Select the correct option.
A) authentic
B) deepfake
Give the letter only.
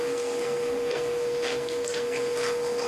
B